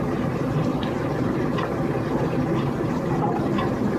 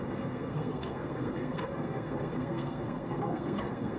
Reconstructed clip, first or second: second